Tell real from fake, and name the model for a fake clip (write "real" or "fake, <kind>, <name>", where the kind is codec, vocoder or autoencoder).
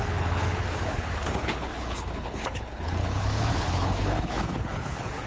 fake, codec, HILCodec